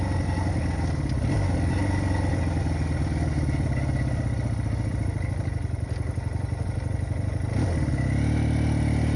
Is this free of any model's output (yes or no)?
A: yes